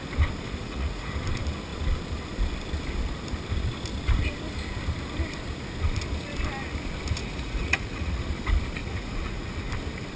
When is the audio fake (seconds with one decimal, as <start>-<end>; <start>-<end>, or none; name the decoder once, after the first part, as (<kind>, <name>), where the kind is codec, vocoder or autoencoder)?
0.6-1.1 (vocoder, Vocos); 7.2-8.2; 8.8-9.7